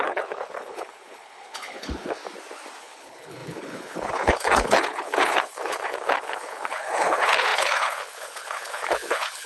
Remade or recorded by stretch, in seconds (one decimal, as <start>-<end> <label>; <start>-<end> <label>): 0.0-2.2 remade; 2.2-2.8 recorded; 2.8-9.5 remade